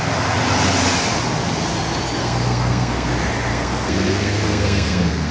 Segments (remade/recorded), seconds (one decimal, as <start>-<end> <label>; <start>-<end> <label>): 0.0-2.2 recorded; 2.2-3.1 remade; 3.1-3.5 recorded; 3.5-5.3 remade